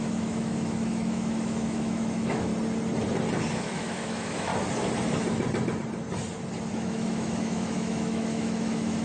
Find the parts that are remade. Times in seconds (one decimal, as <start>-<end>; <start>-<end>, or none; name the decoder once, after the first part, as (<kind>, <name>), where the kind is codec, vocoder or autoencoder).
0.0-2.5 (autoencoder, DAC-VAE); 3.6-4.5; 6.7-9.0